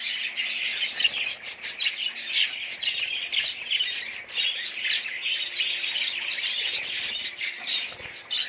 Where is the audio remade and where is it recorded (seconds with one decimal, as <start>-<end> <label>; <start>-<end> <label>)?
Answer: 0.0-8.5 recorded